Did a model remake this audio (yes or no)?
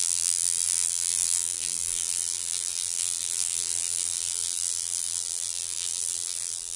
yes